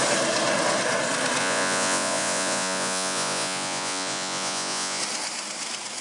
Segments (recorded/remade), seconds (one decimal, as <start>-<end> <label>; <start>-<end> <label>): 0.0-1.4 recorded; 1.4-5.0 remade; 5.0-6.0 recorded